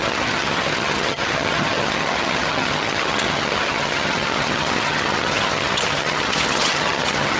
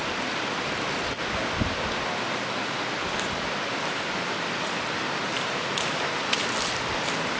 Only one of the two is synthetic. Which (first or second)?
first